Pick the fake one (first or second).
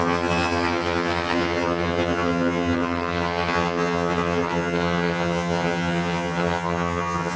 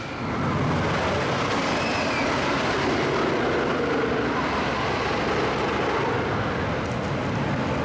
first